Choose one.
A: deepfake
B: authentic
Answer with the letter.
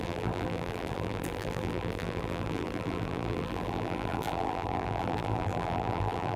A